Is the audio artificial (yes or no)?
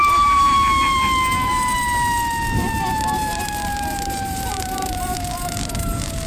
yes